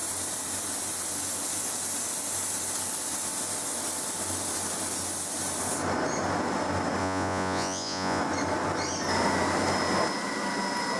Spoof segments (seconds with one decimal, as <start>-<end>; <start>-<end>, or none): 7.0-8.2